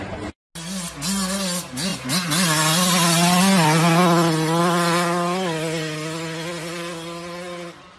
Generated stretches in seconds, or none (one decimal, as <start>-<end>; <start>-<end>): none